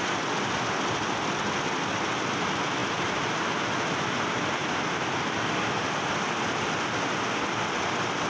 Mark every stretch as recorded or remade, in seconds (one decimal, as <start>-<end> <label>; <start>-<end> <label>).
0.0-8.3 recorded